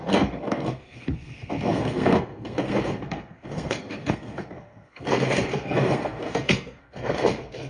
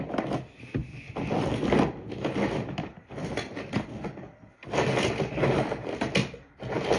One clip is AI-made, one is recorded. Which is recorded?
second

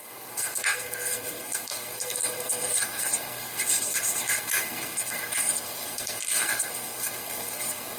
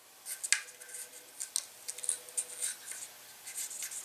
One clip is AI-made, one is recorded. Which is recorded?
second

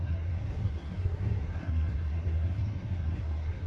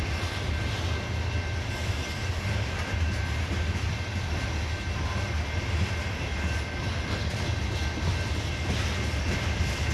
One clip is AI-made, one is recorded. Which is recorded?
second